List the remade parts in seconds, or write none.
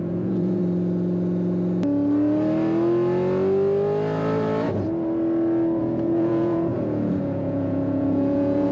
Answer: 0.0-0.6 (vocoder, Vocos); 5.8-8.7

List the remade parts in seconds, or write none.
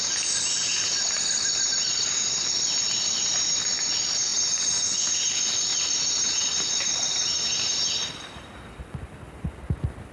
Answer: 0.6-1.2 (vocoder, BigVGAN v2); 5.7-8.8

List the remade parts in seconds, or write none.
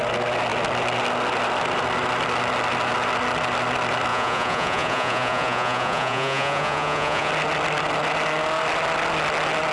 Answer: 4.1-7.3 (vocoder, Vocos)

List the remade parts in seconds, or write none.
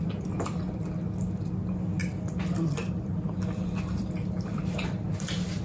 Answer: 2.0-5.6 (vocoder, BigVGAN v2)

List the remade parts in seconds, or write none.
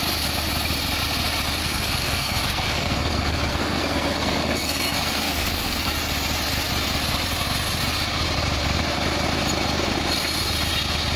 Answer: 1.6-5.9 (codec, SNAC)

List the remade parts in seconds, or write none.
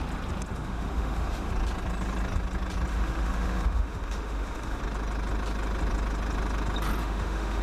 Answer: 0.5-1.5 (autoencoder, DAC-VAE); 2.9-4.8; 7.0-7.6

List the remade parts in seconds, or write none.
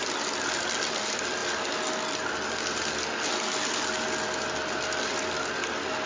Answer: none